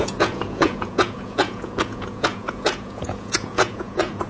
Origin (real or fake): fake